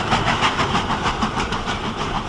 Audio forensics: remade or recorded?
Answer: remade